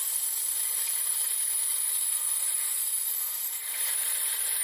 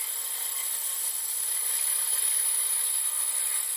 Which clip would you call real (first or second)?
second